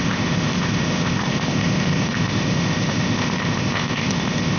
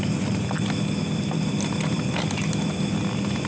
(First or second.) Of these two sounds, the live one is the second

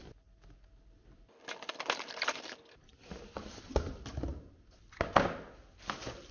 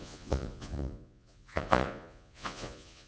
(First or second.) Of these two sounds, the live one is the first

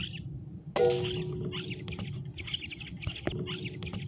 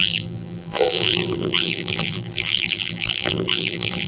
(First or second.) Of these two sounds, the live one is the first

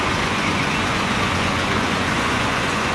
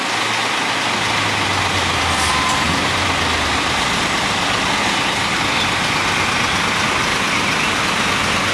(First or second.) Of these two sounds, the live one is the second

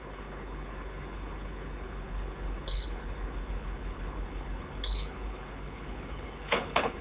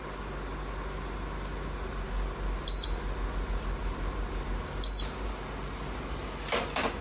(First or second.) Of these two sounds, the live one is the second